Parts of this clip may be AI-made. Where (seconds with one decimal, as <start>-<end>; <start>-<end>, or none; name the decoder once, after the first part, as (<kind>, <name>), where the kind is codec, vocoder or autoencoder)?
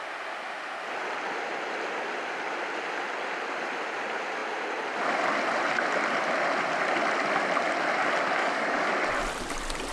8.4-8.9 (codec, DAC)